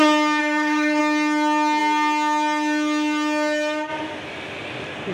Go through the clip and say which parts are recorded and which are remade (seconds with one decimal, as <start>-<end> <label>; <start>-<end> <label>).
0.0-0.4 recorded; 0.4-1.0 remade; 1.0-5.1 recorded